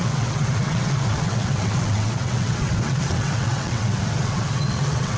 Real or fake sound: fake